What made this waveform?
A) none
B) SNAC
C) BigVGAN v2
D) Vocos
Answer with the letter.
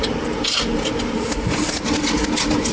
A